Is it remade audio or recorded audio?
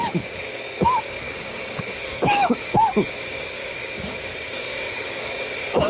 remade